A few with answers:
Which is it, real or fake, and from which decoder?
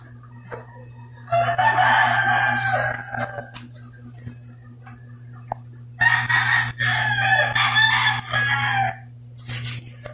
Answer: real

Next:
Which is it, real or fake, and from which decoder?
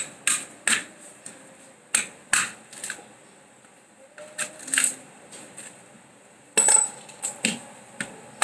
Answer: real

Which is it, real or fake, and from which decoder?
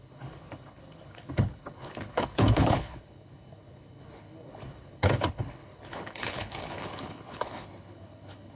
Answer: fake, codec, HILCodec